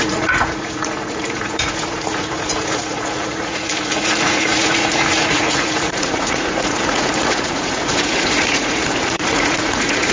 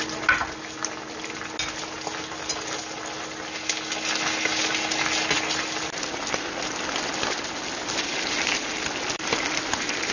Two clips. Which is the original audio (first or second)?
second